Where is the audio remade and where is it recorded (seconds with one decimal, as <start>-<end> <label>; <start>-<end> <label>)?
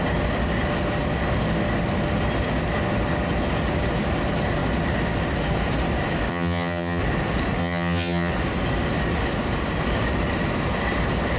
0.0-6.3 recorded; 6.3-7.0 remade; 7.0-7.6 recorded; 7.6-8.3 remade; 8.3-11.4 recorded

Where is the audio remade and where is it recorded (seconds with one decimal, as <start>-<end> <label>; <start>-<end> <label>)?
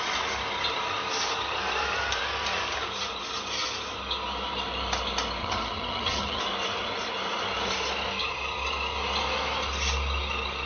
0.0-5.4 recorded; 5.4-6.4 remade; 6.4-10.7 recorded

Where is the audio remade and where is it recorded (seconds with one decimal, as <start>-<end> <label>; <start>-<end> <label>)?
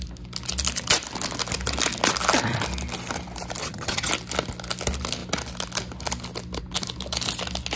0.0-3.6 recorded; 3.6-4.1 remade; 4.1-7.8 recorded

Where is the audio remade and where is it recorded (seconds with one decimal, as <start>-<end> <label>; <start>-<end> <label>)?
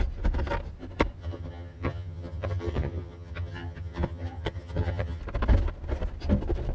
0.0-1.2 recorded; 1.2-5.2 remade; 5.2-6.7 recorded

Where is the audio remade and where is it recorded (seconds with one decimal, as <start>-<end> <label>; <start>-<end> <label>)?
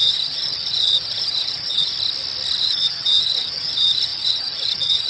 0.0-1.9 remade; 1.9-2.6 recorded; 2.6-5.1 remade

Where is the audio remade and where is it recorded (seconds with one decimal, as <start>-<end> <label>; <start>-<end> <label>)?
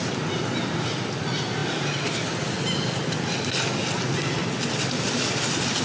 0.0-5.8 recorded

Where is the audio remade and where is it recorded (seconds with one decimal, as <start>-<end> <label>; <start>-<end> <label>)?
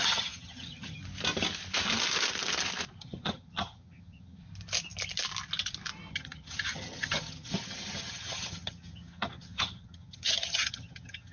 0.0-1.0 remade; 1.0-3.0 recorded; 3.0-4.4 remade; 4.4-6.1 recorded; 6.1-11.3 remade